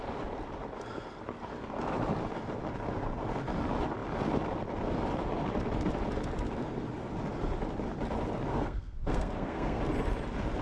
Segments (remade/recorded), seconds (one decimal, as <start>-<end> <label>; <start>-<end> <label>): 0.0-8.5 recorded; 8.5-9.8 remade; 9.8-10.6 recorded